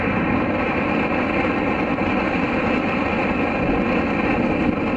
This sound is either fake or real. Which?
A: real